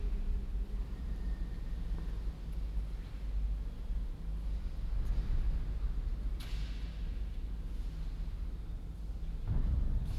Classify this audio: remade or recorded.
recorded